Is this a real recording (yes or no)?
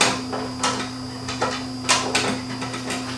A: yes